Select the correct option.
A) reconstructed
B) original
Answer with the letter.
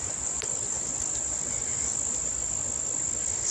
B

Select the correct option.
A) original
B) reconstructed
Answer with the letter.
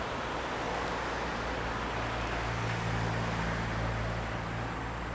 A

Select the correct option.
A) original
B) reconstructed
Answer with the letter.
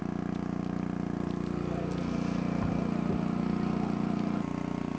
A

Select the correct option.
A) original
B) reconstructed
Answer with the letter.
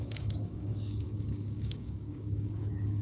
B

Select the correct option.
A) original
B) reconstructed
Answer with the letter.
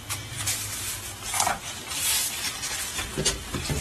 A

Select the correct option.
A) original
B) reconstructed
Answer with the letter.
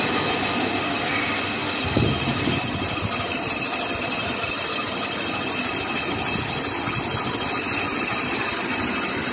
A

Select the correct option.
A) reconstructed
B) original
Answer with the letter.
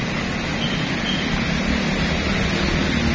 B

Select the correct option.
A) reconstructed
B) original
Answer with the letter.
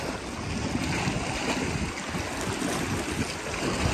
B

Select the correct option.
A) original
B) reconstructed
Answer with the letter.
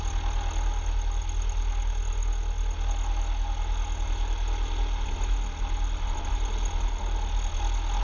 A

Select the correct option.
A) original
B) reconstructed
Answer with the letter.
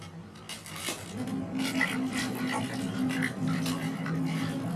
A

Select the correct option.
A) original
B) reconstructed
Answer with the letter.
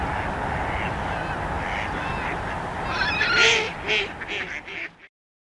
A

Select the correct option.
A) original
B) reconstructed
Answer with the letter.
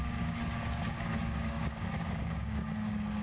B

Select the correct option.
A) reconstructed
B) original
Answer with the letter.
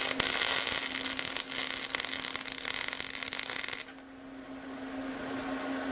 B